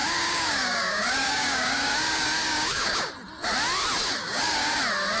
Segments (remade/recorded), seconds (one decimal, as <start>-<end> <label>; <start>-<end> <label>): 0.0-3.1 remade; 3.1-4.2 recorded; 4.2-4.8 remade; 4.8-5.2 recorded